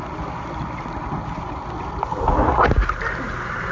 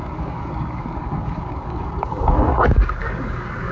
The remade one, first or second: second